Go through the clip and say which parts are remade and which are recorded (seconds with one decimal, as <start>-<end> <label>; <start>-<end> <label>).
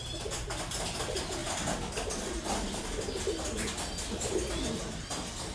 0.0-5.5 recorded